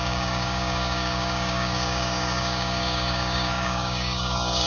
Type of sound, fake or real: fake